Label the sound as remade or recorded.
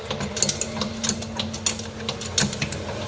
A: recorded